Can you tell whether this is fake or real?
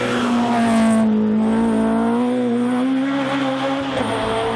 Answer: real